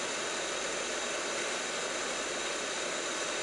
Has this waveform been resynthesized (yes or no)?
yes